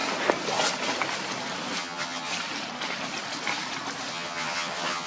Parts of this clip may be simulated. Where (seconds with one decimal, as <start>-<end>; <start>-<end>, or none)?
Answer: 1.8-2.3; 4.1-5.1